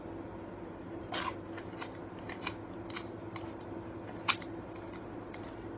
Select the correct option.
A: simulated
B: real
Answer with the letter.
B